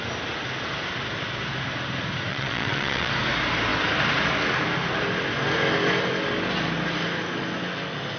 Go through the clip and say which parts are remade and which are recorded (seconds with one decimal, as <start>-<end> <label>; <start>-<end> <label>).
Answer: 0.0-2.3 recorded; 2.3-3.1 remade; 3.1-8.2 recorded